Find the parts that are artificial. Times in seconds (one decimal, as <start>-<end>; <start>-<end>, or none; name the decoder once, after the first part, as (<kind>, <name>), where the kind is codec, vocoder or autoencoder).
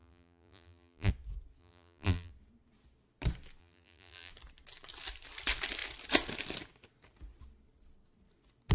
0.0-1.1 (vocoder, BigVGAN v2); 1.6-2.3; 3.6-4.3